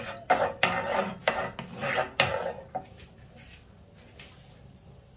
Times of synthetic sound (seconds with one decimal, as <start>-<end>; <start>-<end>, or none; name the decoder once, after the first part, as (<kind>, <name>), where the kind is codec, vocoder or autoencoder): none